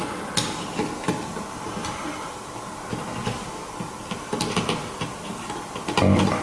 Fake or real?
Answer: real